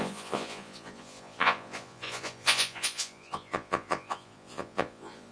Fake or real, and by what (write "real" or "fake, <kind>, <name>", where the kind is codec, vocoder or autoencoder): fake, vocoder, Vocos